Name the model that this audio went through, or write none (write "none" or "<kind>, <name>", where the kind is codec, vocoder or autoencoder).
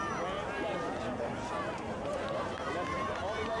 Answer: none